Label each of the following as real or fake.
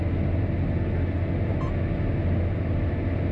real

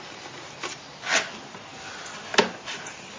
real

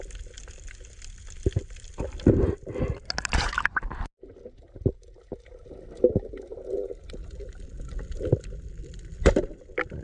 real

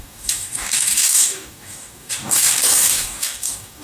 fake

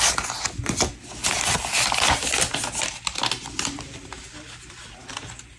real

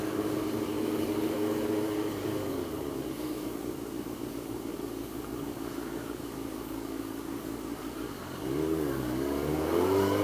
fake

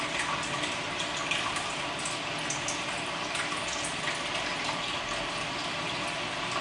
real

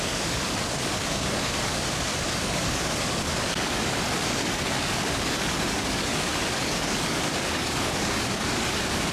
fake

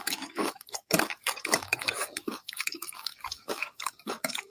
fake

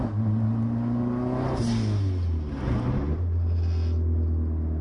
real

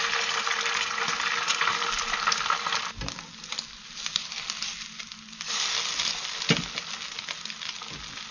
real